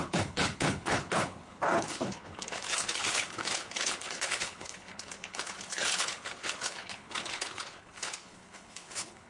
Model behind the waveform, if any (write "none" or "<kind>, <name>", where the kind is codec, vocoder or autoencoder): codec, HILCodec